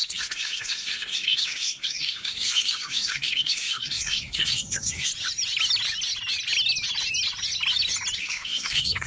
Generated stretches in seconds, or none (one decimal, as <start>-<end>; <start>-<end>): 0.0-5.1; 8.2-9.1